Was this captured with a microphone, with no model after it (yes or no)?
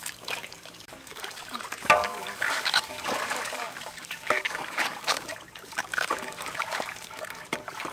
no